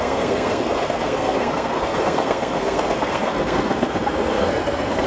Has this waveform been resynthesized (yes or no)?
yes